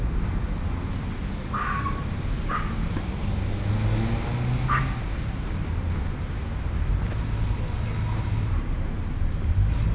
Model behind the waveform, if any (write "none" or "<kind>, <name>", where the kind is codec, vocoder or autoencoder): none